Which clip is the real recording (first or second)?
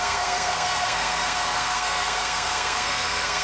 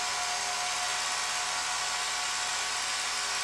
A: second